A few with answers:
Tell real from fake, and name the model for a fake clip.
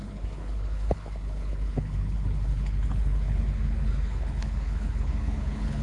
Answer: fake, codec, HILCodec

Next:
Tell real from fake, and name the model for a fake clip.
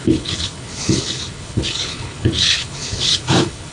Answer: fake, codec, HILCodec